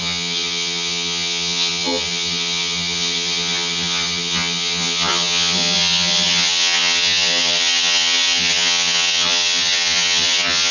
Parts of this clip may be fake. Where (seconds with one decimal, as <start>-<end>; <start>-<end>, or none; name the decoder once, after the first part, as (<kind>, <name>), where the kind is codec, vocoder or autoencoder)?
0.0-10.7 (vocoder, HiFi-GAN)

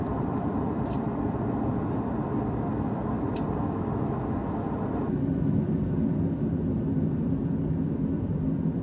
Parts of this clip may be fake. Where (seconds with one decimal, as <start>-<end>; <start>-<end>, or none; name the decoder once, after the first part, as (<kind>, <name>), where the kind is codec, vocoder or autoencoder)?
none

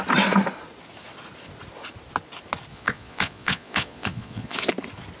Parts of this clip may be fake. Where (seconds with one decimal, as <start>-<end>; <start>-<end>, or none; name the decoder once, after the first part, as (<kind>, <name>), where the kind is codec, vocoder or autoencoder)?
2.7-4.7 (vocoder, Vocos)

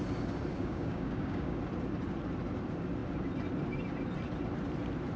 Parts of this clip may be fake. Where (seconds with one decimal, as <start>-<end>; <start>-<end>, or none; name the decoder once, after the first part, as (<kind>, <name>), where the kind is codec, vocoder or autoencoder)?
0.5-1.6 (codec, DAC)

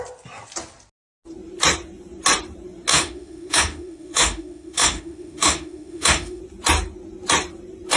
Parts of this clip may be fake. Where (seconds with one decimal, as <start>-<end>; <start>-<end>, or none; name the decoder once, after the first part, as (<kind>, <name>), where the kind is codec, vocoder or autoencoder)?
2.9-6.4 (autoencoder, DAC-VAE)